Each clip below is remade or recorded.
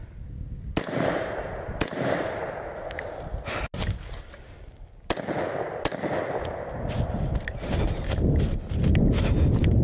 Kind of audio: recorded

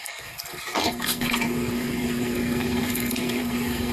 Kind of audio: remade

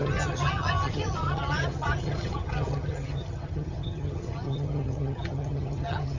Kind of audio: remade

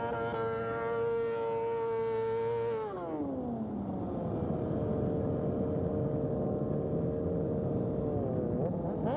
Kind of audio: recorded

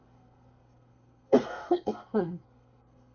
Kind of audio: remade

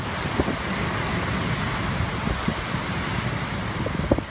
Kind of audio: recorded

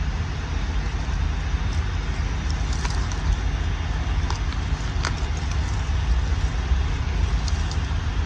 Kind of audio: recorded